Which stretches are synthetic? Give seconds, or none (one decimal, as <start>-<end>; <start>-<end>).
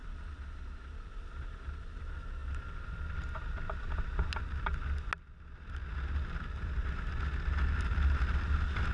none